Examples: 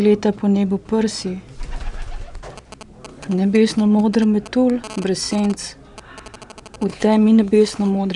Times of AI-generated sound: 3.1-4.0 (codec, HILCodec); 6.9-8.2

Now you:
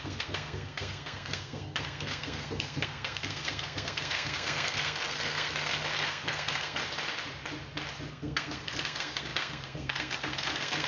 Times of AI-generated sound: 0.0-6.8 (codec, SNAC); 8.1-10.9